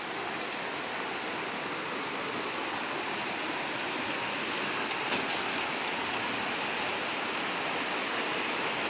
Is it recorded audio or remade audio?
recorded